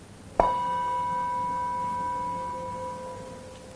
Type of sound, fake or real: real